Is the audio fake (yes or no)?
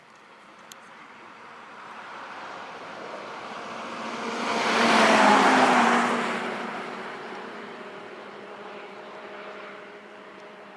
yes